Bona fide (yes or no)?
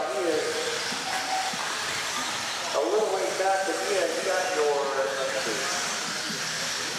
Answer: yes